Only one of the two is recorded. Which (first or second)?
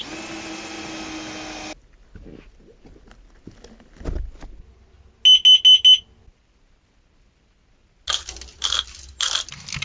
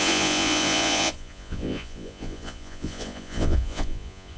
first